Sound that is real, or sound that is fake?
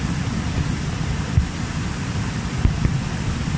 real